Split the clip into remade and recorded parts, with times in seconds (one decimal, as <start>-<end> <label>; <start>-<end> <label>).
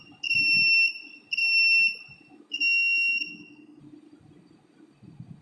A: 0.0-3.1 recorded; 3.1-3.8 remade; 3.8-5.4 recorded